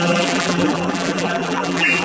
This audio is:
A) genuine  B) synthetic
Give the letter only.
B